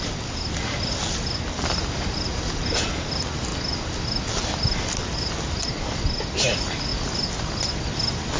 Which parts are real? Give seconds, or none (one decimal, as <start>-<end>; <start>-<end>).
0.0-8.4